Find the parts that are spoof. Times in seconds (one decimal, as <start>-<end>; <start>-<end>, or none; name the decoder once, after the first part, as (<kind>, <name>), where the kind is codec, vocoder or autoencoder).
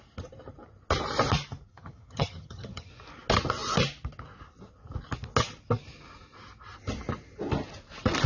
1.7-2.9 (vocoder, HiFi-GAN)